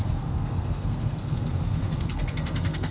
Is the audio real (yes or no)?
no